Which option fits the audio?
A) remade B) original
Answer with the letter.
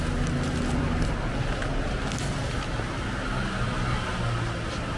B